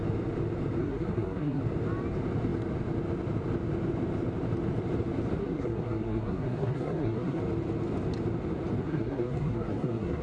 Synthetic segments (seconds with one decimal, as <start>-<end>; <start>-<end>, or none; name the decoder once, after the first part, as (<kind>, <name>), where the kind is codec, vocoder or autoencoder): 0.8-1.6 (codec, SNAC); 5.4-7.4; 8.8-10.2